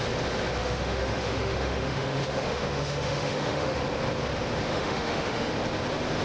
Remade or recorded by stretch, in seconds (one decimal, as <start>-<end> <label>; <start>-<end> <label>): 0.0-0.6 recorded; 0.6-3.8 remade; 3.8-4.7 recorded; 4.7-5.5 remade; 5.5-6.2 recorded